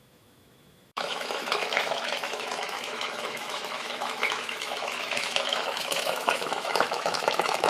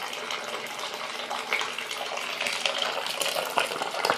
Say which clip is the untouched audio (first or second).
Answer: second